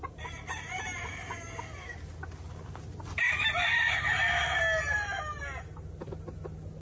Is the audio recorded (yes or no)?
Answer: yes